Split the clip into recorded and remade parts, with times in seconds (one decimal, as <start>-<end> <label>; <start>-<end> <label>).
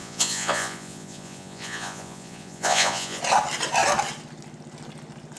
0.0-3.2 remade; 3.2-5.4 recorded